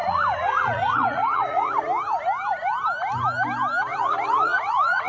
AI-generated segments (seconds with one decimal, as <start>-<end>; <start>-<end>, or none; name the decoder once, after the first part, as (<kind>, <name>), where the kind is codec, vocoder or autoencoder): 0.0-1.8 (vocoder, Vocos); 3.9-5.1